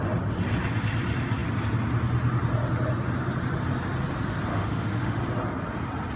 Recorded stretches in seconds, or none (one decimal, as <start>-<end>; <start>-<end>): 0.0-4.5; 5.2-6.2